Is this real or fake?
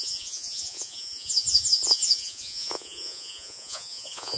fake